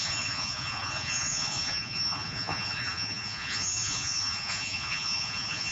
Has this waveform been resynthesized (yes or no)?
yes